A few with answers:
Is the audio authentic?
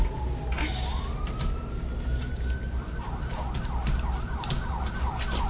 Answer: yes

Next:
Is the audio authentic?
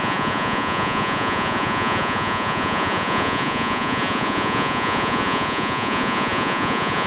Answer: no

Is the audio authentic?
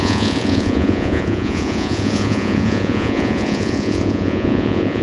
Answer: no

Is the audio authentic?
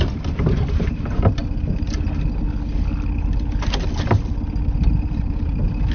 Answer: yes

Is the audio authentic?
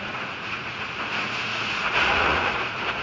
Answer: no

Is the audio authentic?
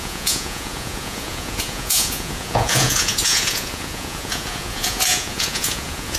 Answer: no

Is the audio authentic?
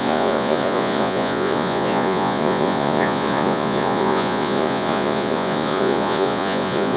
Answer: no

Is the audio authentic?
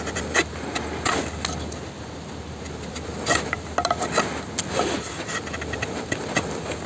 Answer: yes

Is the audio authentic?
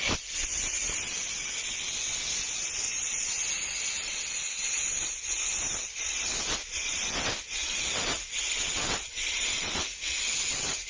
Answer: yes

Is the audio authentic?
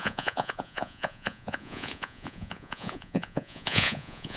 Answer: no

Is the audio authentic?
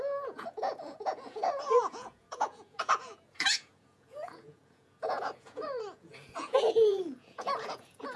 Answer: no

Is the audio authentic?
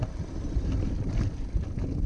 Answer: yes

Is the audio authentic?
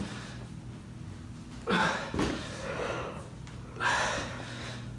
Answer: yes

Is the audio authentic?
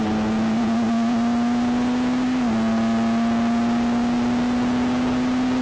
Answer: yes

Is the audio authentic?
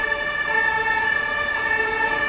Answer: no